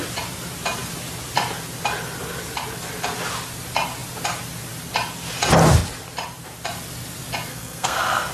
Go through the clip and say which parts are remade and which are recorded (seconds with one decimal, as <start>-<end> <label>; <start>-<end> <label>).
0.0-7.5 recorded; 7.5-8.3 remade